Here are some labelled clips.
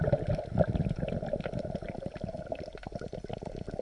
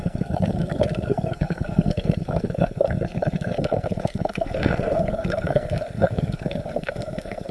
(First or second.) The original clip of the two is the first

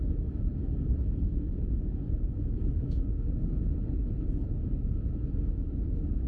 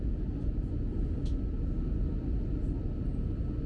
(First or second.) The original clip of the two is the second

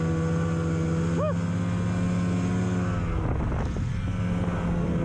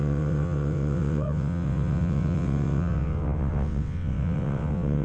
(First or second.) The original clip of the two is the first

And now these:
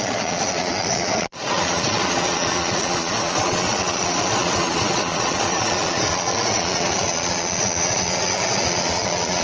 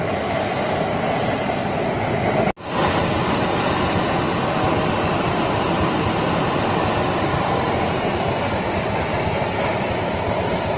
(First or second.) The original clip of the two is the second